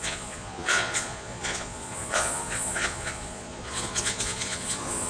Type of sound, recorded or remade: remade